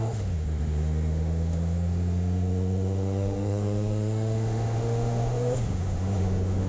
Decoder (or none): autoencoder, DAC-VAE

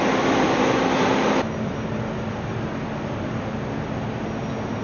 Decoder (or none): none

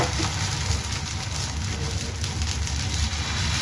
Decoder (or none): none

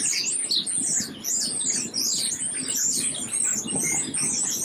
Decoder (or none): none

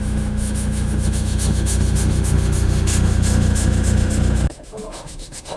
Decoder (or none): autoencoder, DAC-VAE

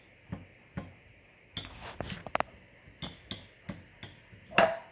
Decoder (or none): none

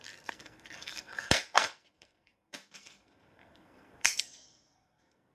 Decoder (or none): codec, SNAC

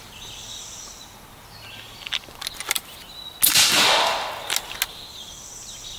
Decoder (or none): none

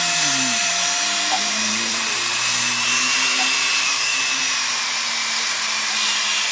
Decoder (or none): vocoder, BigVGAN v2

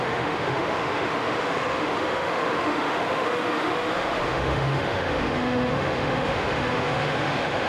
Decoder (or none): autoencoder, DAC-VAE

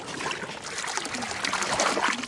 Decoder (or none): none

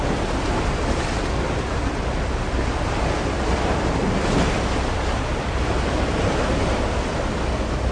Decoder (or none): none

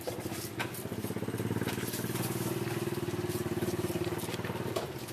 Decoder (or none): none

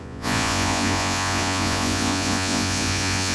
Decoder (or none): vocoder, Vocos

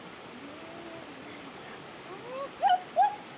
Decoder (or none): none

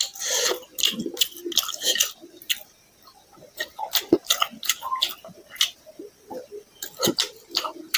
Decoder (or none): none